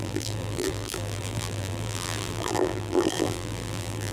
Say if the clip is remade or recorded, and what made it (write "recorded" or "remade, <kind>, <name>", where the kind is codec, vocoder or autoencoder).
remade, vocoder, BigVGAN v2